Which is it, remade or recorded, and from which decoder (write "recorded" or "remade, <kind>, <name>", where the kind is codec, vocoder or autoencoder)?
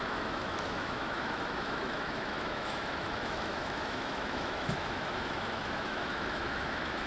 remade, autoencoder, DAC-VAE